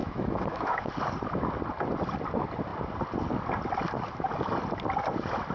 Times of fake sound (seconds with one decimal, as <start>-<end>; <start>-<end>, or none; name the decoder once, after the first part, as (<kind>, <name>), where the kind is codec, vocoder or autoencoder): 0.0-0.9 (autoencoder, DAC-VAE)